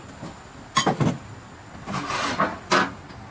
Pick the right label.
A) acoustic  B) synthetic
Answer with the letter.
A